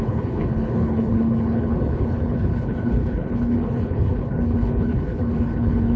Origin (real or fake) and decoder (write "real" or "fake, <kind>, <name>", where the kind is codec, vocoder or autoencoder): fake, codec, HILCodec